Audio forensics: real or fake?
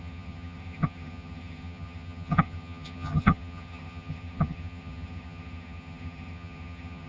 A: fake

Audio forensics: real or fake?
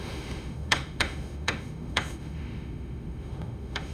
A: fake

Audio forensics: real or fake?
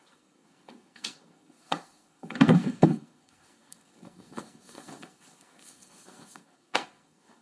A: fake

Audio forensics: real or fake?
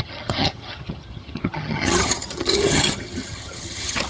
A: fake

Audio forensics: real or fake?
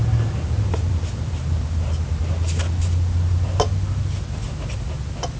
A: real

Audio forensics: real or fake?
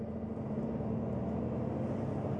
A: real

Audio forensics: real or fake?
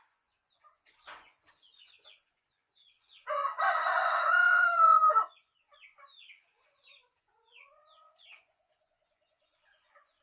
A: fake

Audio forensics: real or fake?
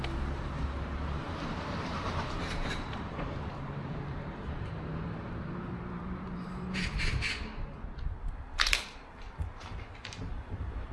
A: fake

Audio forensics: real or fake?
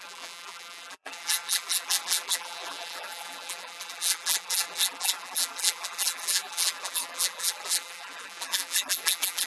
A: fake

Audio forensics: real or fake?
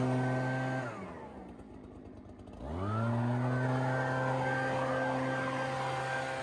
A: real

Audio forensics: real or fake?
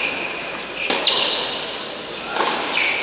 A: real